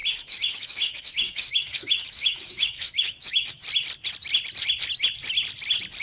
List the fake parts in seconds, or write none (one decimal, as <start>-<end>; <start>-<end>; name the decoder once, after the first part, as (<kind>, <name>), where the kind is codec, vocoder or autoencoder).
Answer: 0.0-3.6 (autoencoder, DAC-VAE)